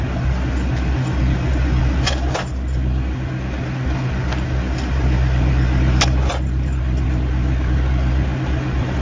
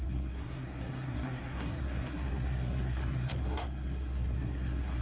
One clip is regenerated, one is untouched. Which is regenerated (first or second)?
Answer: second